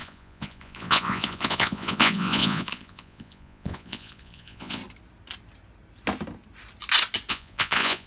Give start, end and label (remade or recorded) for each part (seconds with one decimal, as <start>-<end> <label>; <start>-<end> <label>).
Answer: 0.0-4.8 remade; 4.8-7.3 recorded; 7.3-8.1 remade